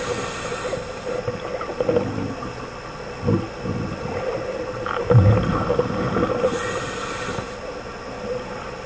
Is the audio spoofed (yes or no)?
no